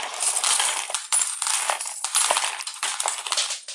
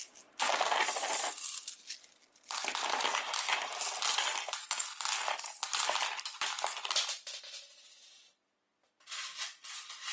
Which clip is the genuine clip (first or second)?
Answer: second